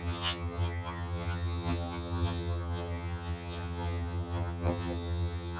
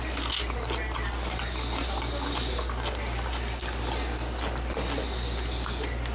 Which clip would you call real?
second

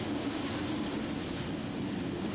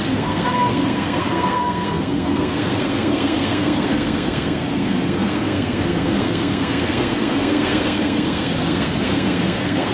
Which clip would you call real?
first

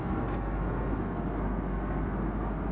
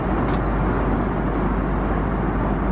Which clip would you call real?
second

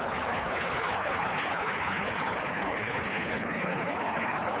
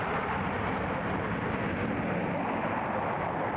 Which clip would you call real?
second